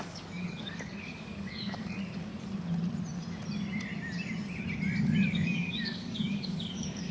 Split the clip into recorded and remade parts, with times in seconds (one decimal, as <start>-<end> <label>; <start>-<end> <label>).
0.0-2.3 remade; 2.3-5.3 recorded; 5.3-7.1 remade